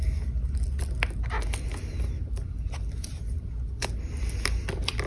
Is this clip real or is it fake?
real